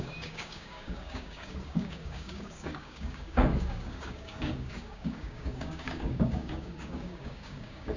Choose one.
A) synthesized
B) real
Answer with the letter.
A